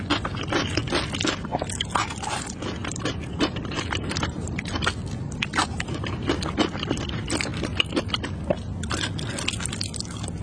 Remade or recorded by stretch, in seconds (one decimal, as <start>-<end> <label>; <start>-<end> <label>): 0.0-2.8 recorded; 2.8-4.7 remade; 4.7-5.5 recorded; 5.5-6.0 remade; 6.0-10.4 recorded